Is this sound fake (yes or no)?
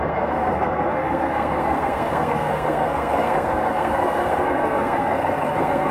yes